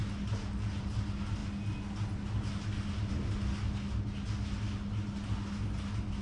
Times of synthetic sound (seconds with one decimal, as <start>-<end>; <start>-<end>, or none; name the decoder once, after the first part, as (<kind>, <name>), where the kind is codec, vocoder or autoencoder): none